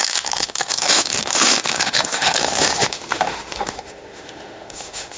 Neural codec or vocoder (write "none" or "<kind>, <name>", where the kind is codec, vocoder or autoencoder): autoencoder, DAC-VAE